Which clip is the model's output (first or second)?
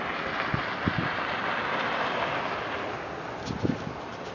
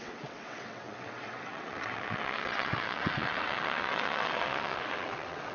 second